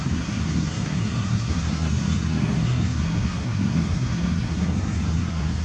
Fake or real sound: fake